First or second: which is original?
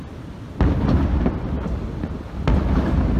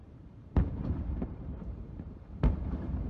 first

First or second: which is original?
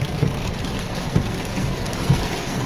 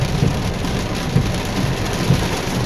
second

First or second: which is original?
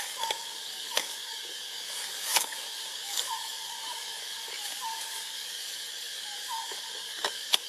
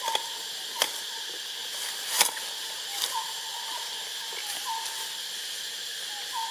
second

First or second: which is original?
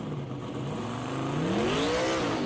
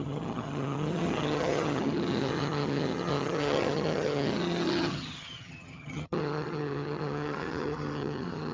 first